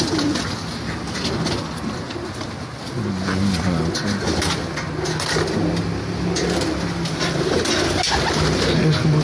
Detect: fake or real real